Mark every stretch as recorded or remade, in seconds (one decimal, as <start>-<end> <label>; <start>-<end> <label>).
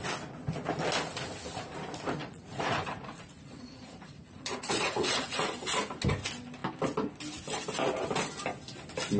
0.0-2.2 recorded; 2.2-5.5 remade; 5.5-9.2 recorded